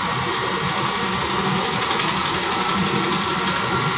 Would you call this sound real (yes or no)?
yes